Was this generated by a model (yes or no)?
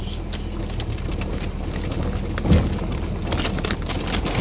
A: no